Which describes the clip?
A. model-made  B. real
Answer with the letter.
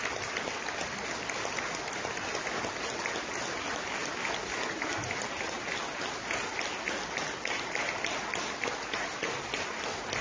B